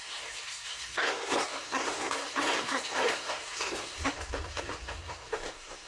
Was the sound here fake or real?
fake